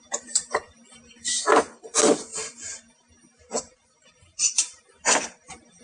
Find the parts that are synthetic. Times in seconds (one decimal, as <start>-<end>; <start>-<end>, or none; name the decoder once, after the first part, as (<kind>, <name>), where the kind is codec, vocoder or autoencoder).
0.0-1.1 (vocoder, BigVGAN v2); 1.6-5.8